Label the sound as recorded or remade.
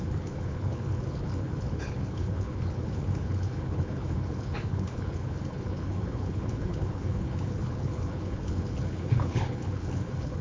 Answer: remade